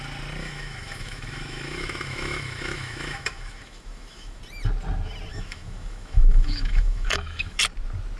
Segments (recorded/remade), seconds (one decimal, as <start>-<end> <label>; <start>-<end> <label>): 0.0-0.4 recorded; 0.4-4.4 remade; 4.4-5.3 recorded; 5.3-7.6 remade; 7.6-8.2 recorded